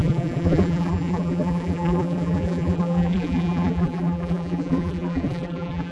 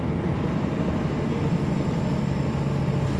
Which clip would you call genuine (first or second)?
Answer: second